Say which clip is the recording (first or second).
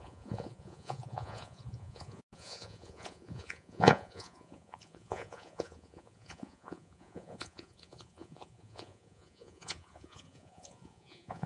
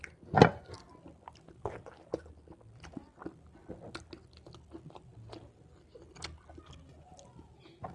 second